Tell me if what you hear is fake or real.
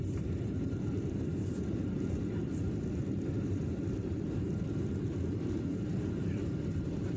fake